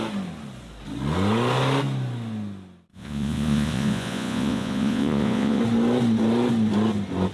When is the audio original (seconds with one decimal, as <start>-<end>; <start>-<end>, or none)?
0.0-2.9; 5.6-7.3